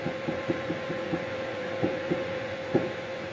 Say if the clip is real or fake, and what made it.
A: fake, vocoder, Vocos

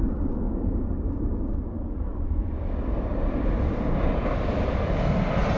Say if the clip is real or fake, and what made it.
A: real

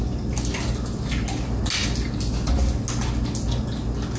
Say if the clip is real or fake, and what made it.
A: real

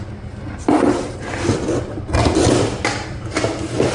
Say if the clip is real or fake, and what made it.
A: fake, vocoder, BigVGAN v2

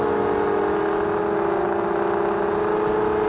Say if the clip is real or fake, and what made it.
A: real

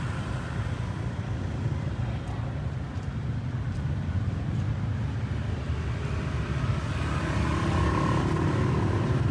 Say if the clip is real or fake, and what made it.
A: real